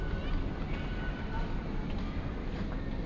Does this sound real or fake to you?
real